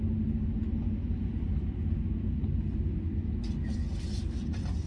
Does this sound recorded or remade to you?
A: recorded